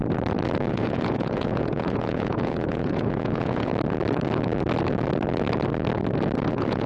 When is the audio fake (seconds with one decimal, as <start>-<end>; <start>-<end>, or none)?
0.7-3.7; 6.5-6.9

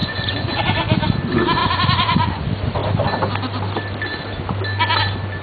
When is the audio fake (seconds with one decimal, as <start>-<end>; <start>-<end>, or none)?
0.0-0.6; 1.6-2.4

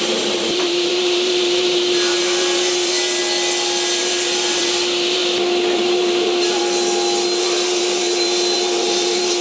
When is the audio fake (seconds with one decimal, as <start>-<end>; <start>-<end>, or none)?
0.0-3.2; 4.0-5.2; 5.7-6.6; 7.4-9.4

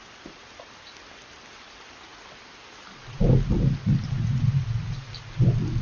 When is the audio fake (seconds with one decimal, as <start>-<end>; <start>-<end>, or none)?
none